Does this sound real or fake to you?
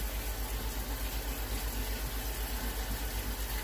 real